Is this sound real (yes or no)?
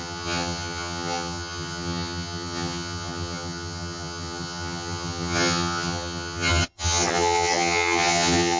no